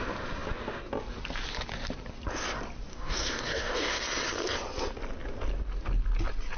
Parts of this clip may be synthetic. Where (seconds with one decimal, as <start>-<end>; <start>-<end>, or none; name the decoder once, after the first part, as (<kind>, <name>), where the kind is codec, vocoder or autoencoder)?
2.9-4.0 (codec, DAC)